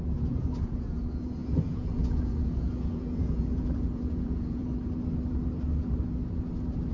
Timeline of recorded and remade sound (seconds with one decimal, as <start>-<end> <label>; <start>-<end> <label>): 0.0-4.6 remade; 4.6-6.9 recorded